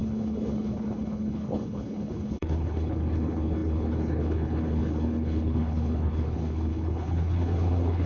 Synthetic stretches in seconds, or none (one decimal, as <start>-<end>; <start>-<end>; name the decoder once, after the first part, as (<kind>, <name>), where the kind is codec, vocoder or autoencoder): 0.0-8.1 (codec, HILCodec)